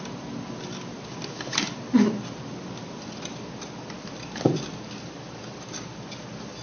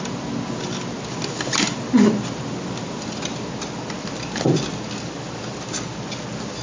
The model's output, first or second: first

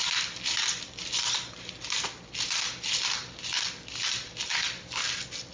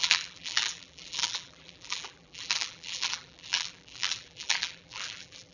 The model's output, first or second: second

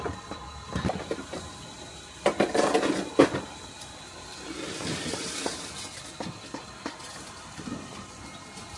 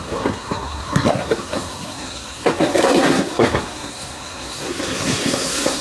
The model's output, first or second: second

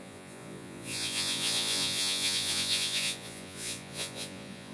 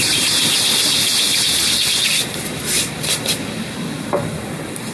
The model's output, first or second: first